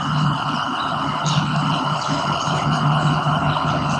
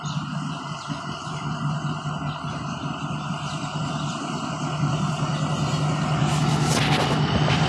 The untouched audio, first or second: second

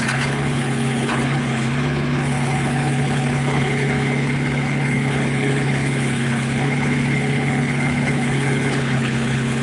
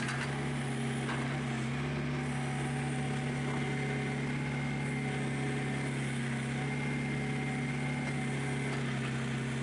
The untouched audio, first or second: second